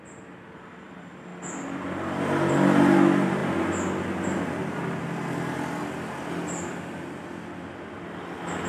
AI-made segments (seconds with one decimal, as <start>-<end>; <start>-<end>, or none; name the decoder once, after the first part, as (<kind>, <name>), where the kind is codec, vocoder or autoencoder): none